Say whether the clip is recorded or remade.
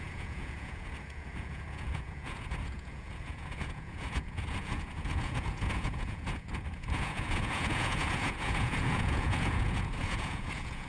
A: remade